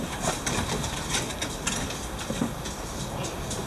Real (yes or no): yes